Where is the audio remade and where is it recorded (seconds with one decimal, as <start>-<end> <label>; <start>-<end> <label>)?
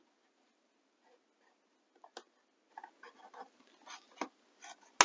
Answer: 0.0-5.0 recorded